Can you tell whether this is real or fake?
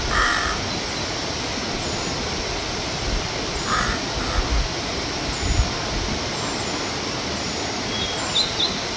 real